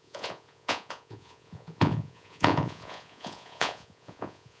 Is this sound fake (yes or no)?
yes